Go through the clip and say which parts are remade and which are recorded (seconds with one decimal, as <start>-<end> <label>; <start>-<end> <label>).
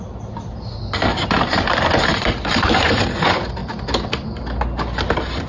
0.0-2.1 recorded; 2.1-3.0 remade; 3.0-5.5 recorded